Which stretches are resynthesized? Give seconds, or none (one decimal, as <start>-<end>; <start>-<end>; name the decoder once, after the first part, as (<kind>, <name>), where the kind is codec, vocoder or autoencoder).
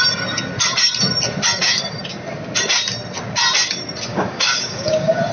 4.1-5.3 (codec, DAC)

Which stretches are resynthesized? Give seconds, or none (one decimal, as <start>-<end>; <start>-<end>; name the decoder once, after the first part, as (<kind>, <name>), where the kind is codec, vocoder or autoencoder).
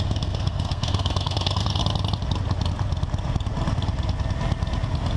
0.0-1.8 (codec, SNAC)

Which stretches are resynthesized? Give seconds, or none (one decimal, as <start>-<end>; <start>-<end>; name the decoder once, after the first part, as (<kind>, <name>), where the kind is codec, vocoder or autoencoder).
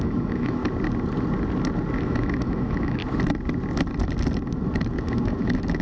0.0-0.6 (autoencoder, DAC-VAE); 2.0-3.0; 5.0-5.8